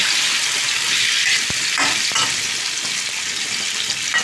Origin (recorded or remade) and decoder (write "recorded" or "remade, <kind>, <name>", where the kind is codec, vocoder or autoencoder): recorded